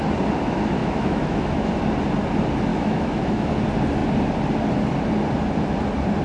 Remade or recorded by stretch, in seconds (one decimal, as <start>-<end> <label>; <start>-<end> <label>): 0.0-0.8 recorded; 0.8-1.7 remade; 1.7-2.7 recorded; 2.7-3.5 remade; 3.5-6.2 recorded